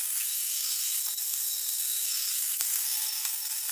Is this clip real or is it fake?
fake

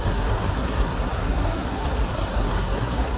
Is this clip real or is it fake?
fake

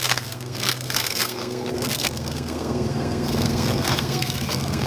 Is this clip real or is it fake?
fake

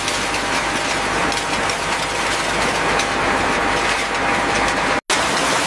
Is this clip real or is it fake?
real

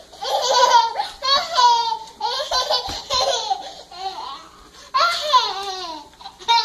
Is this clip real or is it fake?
real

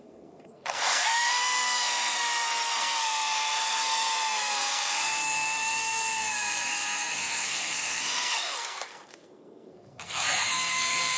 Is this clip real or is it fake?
fake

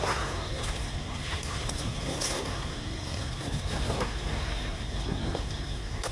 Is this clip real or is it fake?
fake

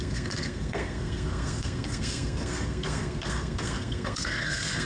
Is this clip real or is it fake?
fake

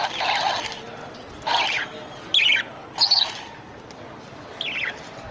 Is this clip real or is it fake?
real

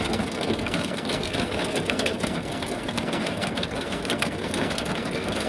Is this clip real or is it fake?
fake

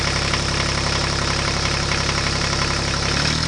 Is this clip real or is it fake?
real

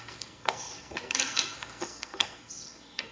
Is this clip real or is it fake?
fake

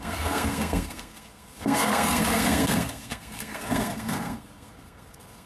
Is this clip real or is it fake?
fake